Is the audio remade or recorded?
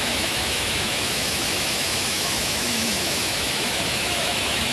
remade